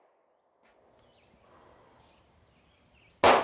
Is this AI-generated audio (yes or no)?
no